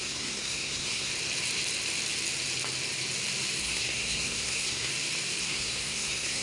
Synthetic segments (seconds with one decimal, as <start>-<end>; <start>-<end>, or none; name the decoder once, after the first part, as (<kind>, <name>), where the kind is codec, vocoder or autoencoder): 0.0-1.1 (codec, SNAC); 3.6-4.9; 5.4-6.4